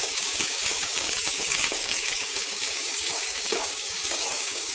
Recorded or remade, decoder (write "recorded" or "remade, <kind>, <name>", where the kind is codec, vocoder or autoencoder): remade, codec, DAC